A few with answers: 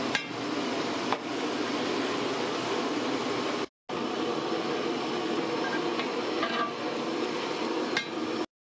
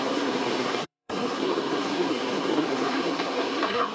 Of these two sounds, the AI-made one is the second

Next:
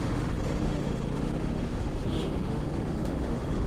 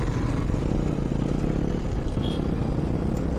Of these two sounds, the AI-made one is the first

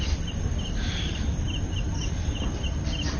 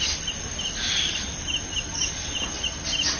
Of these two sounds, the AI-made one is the first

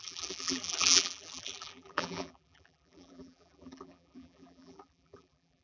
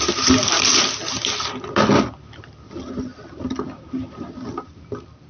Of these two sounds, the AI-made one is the first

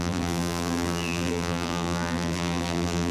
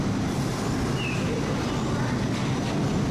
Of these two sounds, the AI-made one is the first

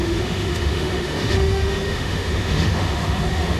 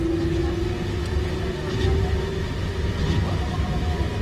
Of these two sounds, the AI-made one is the first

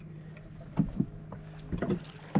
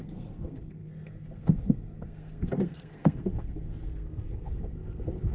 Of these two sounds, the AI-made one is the second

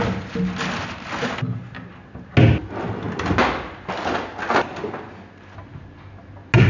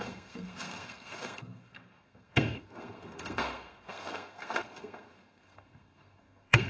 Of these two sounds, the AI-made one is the second